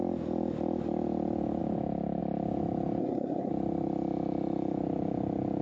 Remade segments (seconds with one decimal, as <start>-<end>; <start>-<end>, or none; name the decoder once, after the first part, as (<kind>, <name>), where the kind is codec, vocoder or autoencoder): 3.0-3.5 (codec, SNAC)